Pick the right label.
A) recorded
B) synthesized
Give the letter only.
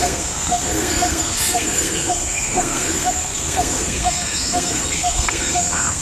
B